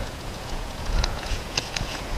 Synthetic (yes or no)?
yes